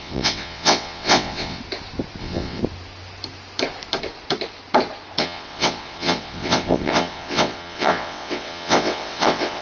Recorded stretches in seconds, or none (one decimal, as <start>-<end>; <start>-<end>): 1.6-2.2; 2.6-5.2